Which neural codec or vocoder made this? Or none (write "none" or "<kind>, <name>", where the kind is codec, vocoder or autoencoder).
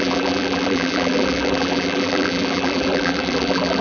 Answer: vocoder, BigVGAN v2